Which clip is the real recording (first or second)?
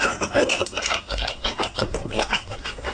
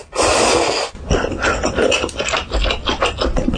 second